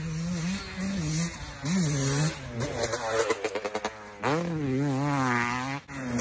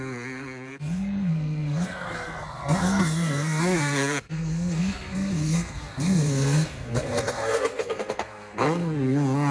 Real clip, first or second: first